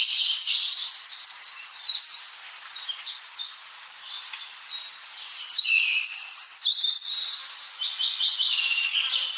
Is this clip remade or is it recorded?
recorded